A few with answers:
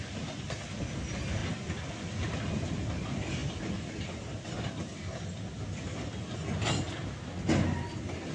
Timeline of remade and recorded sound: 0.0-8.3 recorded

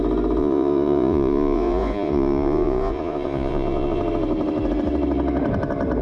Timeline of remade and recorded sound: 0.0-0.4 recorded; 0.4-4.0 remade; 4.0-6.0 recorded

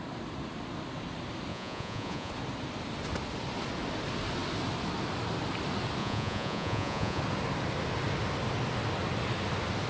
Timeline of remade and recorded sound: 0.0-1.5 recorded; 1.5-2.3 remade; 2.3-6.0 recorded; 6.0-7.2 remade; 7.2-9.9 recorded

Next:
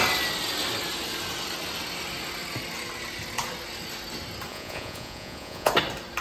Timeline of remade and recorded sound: 0.0-4.5 recorded; 4.5-5.7 remade; 5.7-6.2 recorded

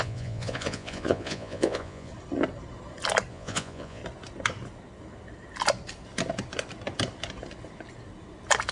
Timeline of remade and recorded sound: 0.0-2.1 remade; 2.1-3.3 recorded; 3.3-4.0 remade; 4.0-8.7 recorded

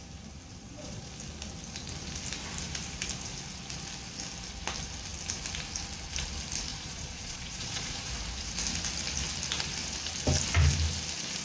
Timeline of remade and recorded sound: 0.0-0.5 recorded; 0.5-1.1 remade; 1.1-6.7 recorded; 6.7-8.1 remade; 8.1-11.4 recorded